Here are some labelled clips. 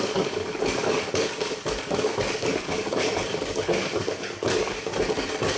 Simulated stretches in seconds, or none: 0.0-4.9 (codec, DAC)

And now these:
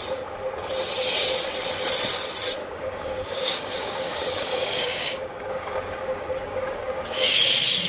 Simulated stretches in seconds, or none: 2.6-7.3 (codec, DAC)

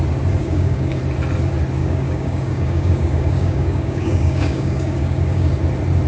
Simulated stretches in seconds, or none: 0.4-1.0 (codec, DAC); 1.8-5.5